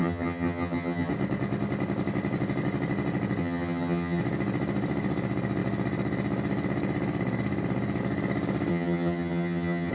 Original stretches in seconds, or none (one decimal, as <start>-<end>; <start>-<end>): 1.1-3.4; 4.2-8.7